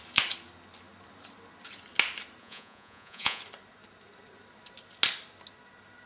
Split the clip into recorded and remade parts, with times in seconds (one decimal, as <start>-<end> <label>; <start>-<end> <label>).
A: 0.0-2.4 recorded; 2.4-3.4 remade; 3.4-6.1 recorded